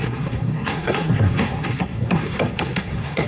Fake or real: fake